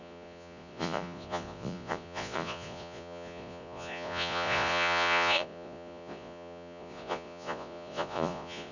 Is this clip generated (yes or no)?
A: yes